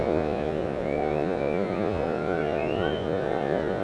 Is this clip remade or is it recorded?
remade